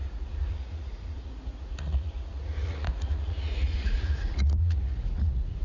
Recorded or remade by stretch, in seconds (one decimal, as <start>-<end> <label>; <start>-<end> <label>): 0.0-5.6 remade

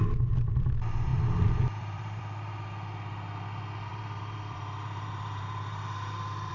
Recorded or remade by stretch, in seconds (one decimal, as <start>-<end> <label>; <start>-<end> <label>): 0.0-1.1 recorded; 1.1-2.2 remade; 2.2-3.9 recorded; 3.9-6.5 remade

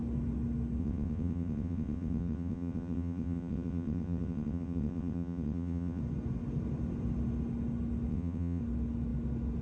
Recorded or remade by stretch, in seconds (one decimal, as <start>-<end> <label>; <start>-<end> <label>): 0.0-0.8 recorded; 0.8-6.0 remade; 6.0-8.1 recorded; 8.1-8.6 remade; 8.6-9.6 recorded

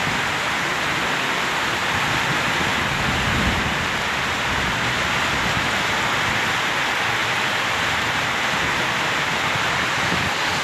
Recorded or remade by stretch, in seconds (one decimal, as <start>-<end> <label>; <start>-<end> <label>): 0.0-10.6 recorded